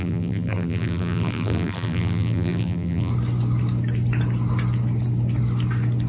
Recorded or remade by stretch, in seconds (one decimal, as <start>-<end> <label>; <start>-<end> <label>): 0.0-3.1 remade; 3.1-6.1 recorded